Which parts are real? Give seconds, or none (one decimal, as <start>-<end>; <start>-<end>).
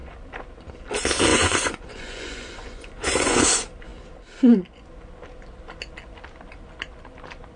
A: 0.0-1.3; 3.4-7.6